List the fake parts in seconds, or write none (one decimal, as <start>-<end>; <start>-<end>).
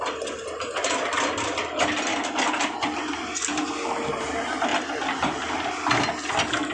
none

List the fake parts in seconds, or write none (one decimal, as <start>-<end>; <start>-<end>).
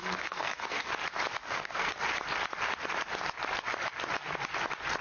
0.0-0.9; 1.4-2.0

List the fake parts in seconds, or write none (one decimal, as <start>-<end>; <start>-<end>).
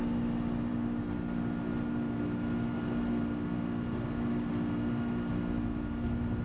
none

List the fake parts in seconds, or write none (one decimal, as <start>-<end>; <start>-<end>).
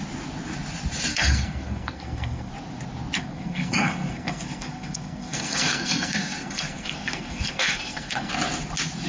1.1-2.5; 3.2-8.3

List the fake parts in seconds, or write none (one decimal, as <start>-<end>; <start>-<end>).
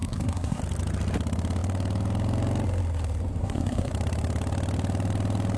0.0-0.6; 3.4-3.9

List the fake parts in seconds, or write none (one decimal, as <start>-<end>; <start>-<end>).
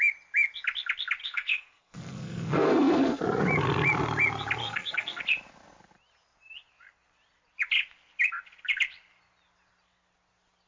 1.2-3.2; 4.6-5.2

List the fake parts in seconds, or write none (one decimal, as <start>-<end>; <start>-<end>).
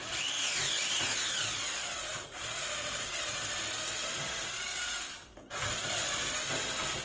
none